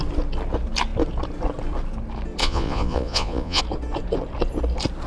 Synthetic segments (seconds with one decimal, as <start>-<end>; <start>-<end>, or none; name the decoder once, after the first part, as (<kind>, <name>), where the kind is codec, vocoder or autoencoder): 2.4-3.6 (vocoder, Vocos)